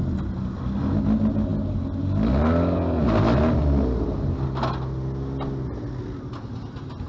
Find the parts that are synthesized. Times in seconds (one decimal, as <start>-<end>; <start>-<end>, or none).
none